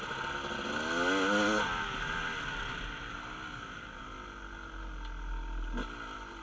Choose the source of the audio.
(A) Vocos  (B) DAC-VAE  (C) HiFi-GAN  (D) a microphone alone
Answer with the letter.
D